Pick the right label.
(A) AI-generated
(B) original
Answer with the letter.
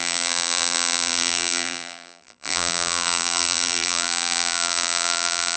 A